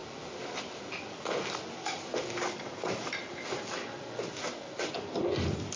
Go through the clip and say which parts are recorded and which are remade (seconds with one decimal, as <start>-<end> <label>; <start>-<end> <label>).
0.0-5.8 recorded

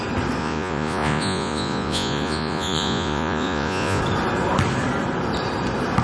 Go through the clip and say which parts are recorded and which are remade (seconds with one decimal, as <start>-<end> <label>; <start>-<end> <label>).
0.0-0.4 recorded; 0.4-4.0 remade; 4.0-6.0 recorded

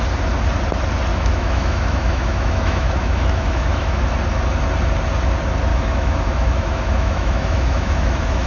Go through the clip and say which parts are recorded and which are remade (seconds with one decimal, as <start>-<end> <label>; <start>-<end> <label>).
0.0-1.1 recorded; 1.1-4.0 remade; 4.0-5.7 recorded; 5.7-8.5 remade